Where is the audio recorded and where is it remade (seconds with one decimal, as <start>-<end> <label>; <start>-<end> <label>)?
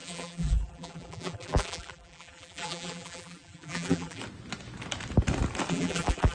0.0-4.2 remade; 4.2-5.7 recorded; 5.7-6.3 remade